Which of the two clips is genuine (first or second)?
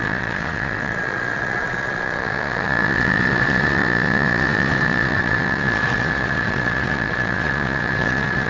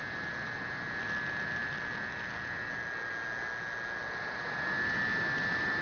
second